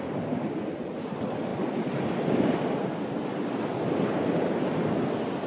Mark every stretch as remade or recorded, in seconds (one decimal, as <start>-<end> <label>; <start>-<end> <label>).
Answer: 0.0-5.5 recorded